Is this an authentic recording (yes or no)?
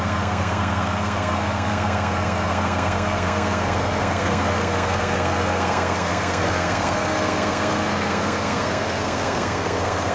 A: no